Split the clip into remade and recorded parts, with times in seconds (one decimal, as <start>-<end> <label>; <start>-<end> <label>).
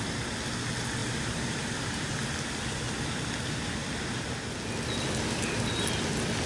0.0-1.0 recorded; 1.0-2.1 remade; 2.1-6.5 recorded